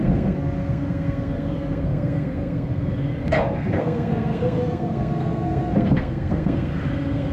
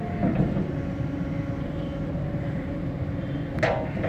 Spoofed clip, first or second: first